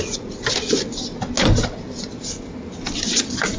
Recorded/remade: recorded